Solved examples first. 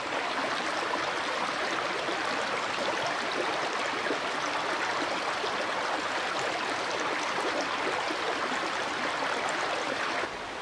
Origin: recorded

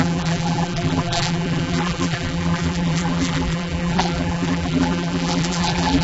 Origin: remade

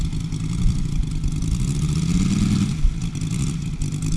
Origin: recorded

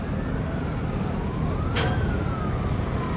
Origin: recorded